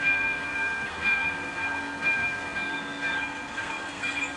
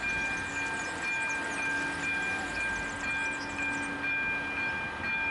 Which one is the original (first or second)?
second